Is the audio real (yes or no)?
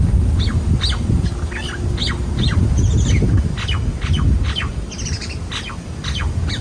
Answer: yes